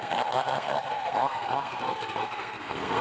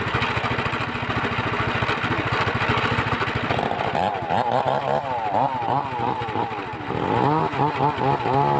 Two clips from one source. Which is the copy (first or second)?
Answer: first